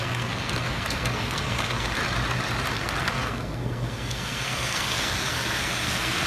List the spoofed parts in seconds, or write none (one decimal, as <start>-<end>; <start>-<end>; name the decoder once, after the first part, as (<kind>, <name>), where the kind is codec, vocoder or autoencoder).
0.0-2.0 (codec, SNAC); 2.7-6.3